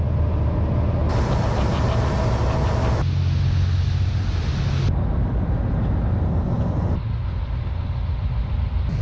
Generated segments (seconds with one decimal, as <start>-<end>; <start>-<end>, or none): 1.0-2.3